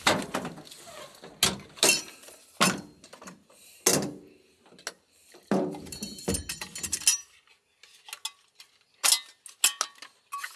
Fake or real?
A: real